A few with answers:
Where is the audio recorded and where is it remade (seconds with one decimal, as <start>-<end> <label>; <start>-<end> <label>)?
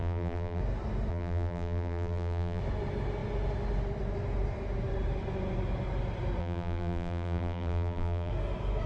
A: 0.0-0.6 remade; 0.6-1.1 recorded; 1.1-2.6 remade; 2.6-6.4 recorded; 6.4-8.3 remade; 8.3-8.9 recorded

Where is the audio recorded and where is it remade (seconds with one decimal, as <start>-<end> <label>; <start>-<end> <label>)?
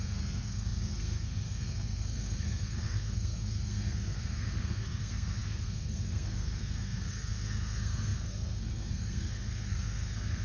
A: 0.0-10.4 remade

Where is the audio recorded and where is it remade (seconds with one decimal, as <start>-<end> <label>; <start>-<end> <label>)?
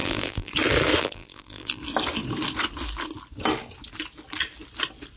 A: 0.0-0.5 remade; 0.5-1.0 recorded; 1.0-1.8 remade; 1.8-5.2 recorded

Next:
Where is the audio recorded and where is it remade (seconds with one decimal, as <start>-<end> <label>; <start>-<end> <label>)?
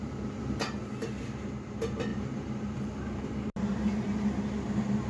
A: 0.0-2.1 recorded; 2.1-3.2 remade; 3.2-5.1 recorded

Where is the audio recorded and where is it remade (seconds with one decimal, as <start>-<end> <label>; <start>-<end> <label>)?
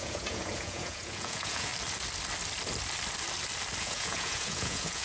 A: 0.0-1.7 remade; 1.7-3.8 recorded; 3.8-5.0 remade